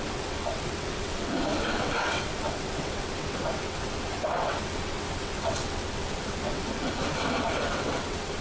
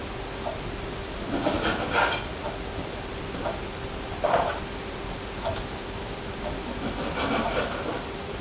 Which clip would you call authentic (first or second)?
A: second